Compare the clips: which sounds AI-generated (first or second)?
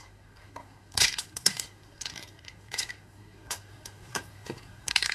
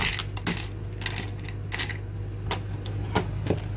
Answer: first